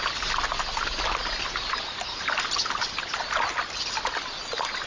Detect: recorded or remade recorded